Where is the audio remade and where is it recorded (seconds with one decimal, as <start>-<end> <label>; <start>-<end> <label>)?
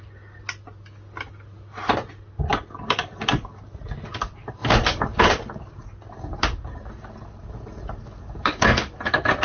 0.0-9.4 recorded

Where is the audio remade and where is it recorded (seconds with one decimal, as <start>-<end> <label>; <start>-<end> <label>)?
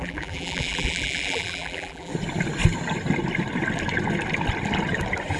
0.0-2.1 remade; 2.1-5.4 recorded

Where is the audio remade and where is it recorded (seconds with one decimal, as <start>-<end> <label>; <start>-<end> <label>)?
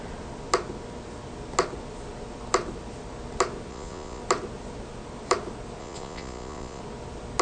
0.0-3.7 recorded; 3.7-4.2 remade; 4.2-5.8 recorded; 5.8-6.8 remade; 6.8-7.4 recorded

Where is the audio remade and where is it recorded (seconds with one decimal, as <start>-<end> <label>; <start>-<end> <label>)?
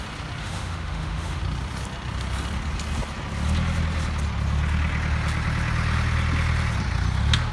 0.0-0.4 recorded; 0.4-1.4 remade; 1.4-7.5 recorded